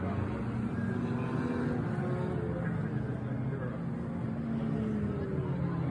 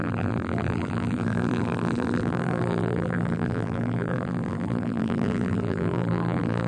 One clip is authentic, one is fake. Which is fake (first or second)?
second